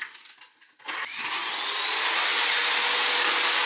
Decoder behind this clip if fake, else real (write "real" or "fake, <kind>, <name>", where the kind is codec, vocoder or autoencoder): real